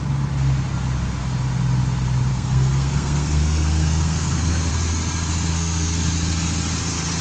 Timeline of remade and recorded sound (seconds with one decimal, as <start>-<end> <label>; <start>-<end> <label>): 0.0-2.3 recorded; 2.3-4.7 remade; 4.7-5.5 recorded; 5.5-6.0 remade; 6.0-7.2 recorded